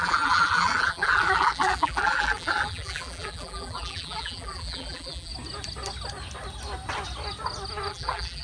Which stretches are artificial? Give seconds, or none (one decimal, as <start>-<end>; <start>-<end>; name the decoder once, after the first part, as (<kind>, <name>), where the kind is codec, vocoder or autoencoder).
0.0-5.3 (vocoder, BigVGAN v2); 7.9-8.4